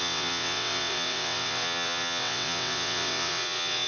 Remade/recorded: remade